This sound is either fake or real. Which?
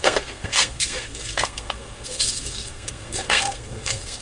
fake